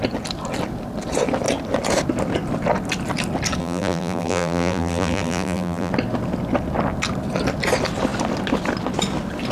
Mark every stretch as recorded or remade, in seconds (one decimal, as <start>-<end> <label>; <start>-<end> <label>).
0.0-3.6 recorded; 3.6-5.9 remade; 5.9-9.5 recorded